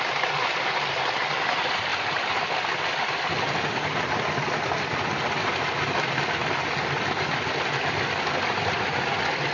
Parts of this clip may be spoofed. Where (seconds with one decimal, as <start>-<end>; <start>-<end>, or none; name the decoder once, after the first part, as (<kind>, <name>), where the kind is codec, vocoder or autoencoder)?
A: 1.9-3.5 (vocoder, BigVGAN v2)